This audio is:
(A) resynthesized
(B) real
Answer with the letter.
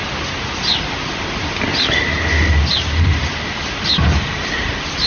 B